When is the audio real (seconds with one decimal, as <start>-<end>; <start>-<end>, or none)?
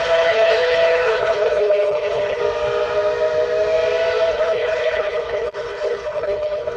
2.4-4.3